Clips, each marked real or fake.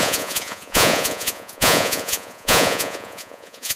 fake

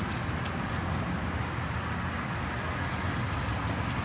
real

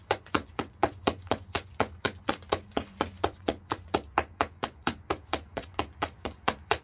fake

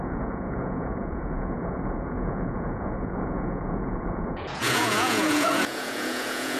fake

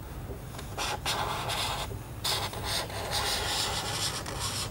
real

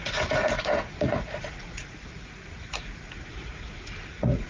fake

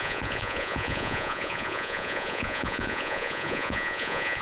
fake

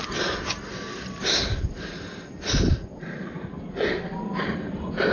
real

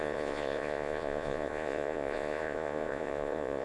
fake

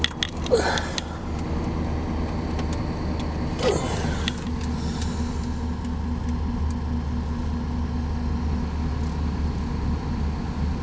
real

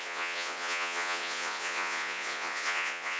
fake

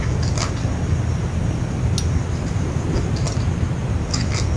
real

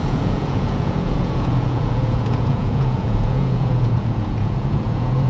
fake